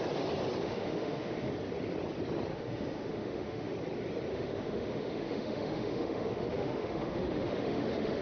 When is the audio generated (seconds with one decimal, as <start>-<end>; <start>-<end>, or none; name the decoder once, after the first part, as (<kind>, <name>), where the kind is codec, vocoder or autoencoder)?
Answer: 0.6-1.5 (autoencoder, DAC-VAE); 2.5-3.7; 4.3-8.2